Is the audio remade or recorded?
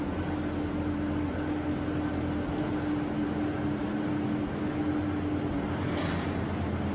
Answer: recorded